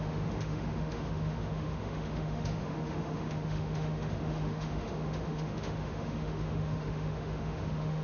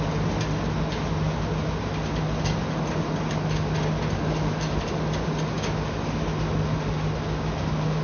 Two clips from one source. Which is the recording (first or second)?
second